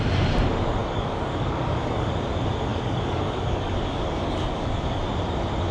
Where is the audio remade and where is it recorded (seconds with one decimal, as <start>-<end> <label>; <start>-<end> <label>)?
0.0-0.8 recorded; 0.8-2.1 remade; 2.1-2.7 recorded; 2.7-5.0 remade; 5.0-5.7 recorded